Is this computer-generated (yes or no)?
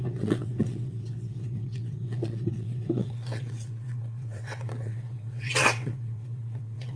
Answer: yes